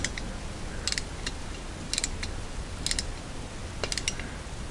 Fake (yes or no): no